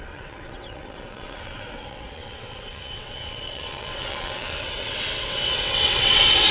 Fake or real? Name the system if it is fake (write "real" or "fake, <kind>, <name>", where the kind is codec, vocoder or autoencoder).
fake, vocoder, WaveNeXt